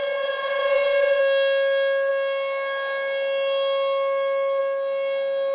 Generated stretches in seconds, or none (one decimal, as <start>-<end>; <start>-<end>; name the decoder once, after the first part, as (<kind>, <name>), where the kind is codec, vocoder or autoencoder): 0.0-1.2 (vocoder, Vocos)